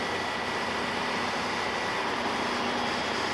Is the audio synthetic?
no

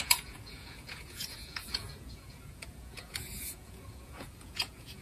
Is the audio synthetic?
yes